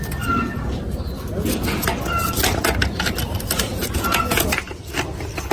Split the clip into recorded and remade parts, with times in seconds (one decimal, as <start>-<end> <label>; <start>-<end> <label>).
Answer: 0.0-3.7 recorded; 3.7-4.8 remade; 4.8-5.5 recorded